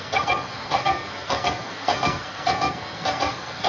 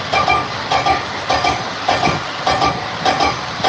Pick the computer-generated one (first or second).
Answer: first